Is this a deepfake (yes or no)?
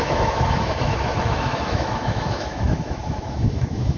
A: yes